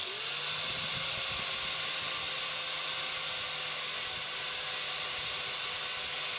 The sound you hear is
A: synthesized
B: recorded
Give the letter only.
B